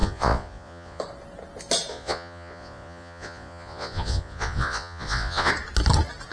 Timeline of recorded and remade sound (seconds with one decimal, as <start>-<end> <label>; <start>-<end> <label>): 0.0-1.0 remade; 1.0-1.9 recorded; 1.9-5.5 remade; 5.5-6.3 recorded